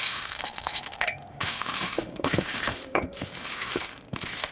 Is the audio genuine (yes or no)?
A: no